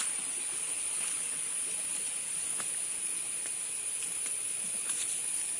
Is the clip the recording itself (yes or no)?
yes